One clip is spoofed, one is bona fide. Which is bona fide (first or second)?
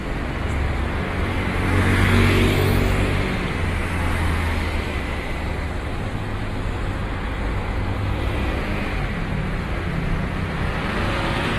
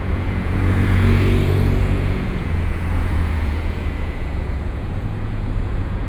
first